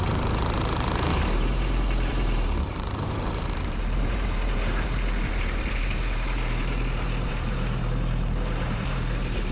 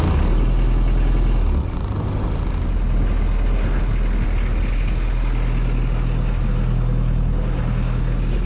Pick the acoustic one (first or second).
second